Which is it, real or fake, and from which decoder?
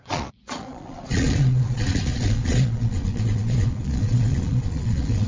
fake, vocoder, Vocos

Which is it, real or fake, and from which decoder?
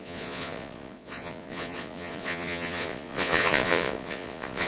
fake, vocoder, Vocos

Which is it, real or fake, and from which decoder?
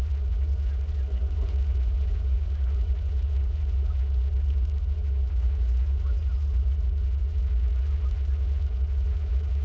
fake, vocoder, Vocos